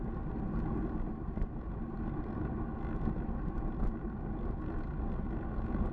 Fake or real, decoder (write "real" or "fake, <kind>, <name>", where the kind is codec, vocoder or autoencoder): real